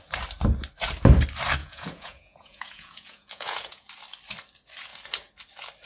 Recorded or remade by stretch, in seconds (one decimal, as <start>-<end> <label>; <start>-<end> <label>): 0.0-1.6 recorded; 1.6-3.9 remade; 3.9-5.9 recorded